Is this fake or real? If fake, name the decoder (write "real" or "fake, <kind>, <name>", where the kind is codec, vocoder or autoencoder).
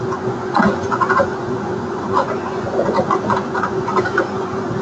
fake, vocoder, Vocos